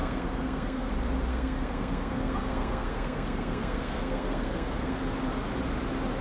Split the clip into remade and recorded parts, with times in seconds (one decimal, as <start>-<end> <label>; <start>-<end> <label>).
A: 0.0-0.9 remade; 0.9-1.3 recorded; 1.3-5.0 remade; 5.0-6.2 recorded